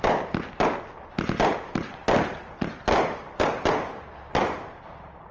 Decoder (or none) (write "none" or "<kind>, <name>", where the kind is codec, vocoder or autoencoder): none